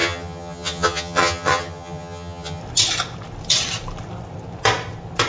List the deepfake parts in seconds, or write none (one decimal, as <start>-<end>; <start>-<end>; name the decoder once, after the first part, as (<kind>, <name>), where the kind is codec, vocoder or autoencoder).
0.0-2.6 (vocoder, HiFi-GAN)